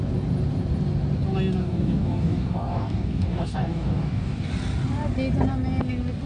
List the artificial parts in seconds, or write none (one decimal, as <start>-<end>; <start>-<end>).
1.6-4.5